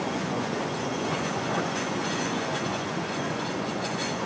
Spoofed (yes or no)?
yes